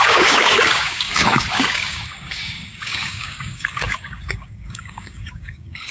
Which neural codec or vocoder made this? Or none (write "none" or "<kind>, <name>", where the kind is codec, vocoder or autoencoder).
codec, DAC